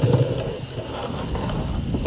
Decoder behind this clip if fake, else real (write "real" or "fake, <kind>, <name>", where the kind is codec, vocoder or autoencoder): real